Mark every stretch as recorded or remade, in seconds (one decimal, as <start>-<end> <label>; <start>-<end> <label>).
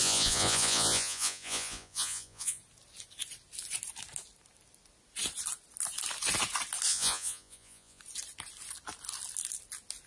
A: 0.0-2.6 remade; 2.6-6.9 recorded; 6.9-8.0 remade; 8.0-10.1 recorded